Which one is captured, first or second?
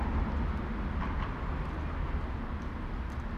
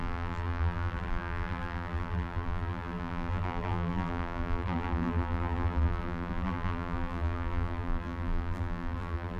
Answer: first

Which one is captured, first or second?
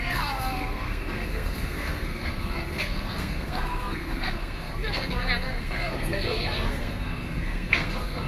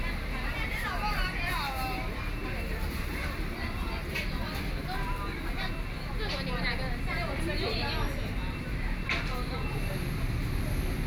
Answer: second